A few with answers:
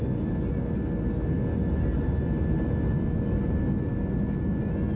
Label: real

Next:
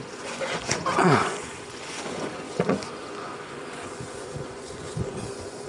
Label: fake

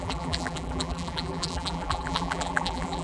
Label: fake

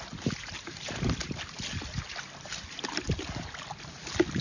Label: real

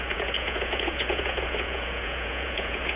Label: fake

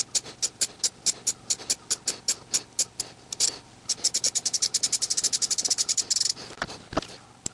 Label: real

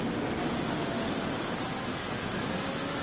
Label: real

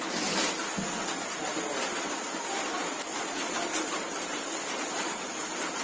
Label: real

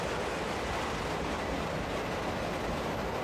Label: real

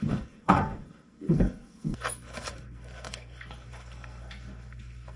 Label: fake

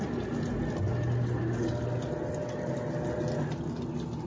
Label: real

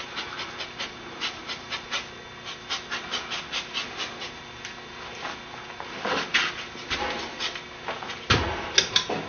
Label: real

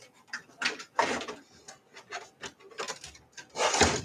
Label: real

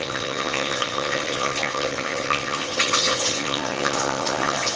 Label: fake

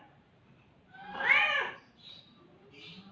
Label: fake